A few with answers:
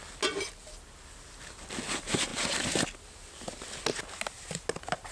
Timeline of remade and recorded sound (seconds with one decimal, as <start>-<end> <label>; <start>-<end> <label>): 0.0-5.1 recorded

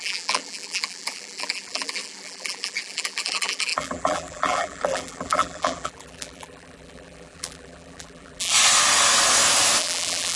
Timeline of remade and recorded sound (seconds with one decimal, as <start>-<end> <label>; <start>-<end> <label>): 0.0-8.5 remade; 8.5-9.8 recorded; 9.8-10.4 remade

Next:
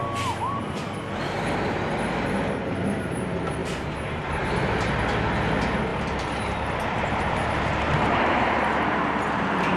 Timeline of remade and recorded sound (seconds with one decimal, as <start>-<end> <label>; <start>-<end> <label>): 0.0-3.6 recorded; 3.6-4.3 remade; 4.3-5.9 recorded; 5.9-8.8 remade; 8.8-9.8 recorded

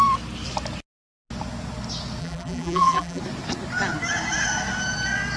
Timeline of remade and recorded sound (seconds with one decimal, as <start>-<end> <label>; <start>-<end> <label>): 0.0-2.2 recorded; 2.2-3.2 remade; 3.2-5.4 recorded